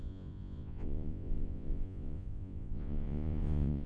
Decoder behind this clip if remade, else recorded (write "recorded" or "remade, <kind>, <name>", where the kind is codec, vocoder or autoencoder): remade, vocoder, Vocos